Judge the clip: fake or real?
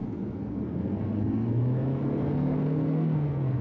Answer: fake